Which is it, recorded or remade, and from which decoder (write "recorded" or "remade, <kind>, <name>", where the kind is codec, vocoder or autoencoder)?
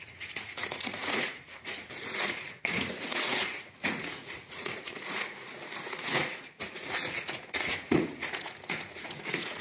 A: remade, vocoder, Vocos